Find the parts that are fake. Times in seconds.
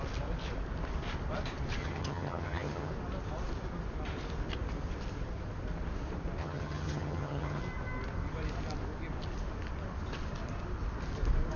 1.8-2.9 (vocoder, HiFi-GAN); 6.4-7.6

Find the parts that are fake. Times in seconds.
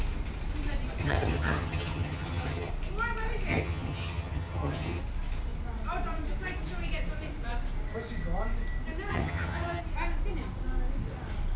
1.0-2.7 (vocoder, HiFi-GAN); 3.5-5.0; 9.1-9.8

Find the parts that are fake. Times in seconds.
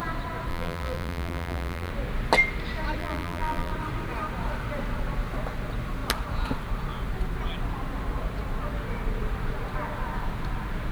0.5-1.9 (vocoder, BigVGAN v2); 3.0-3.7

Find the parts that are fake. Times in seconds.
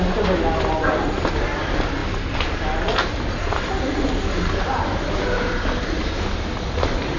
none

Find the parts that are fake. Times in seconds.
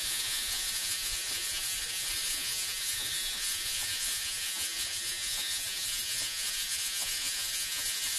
0.0-8.2 (vocoder, Vocos)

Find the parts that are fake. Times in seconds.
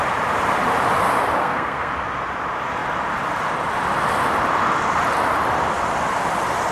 1.4-1.9 (codec, SNAC)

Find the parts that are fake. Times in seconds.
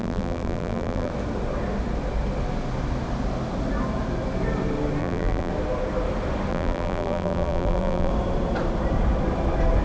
0.0-1.1 (vocoder, BigVGAN v2); 5.0-5.5; 6.5-8.1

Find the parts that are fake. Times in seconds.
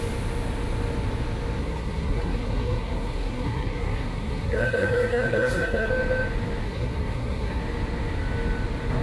1.6-5.9 (codec, SNAC); 6.6-7.6